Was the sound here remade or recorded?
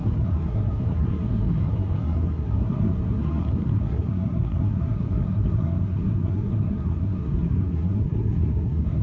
remade